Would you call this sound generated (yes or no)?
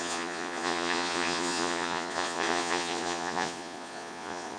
yes